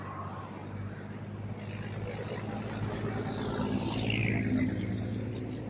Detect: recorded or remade recorded